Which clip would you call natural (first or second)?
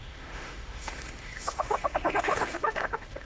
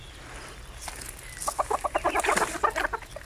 second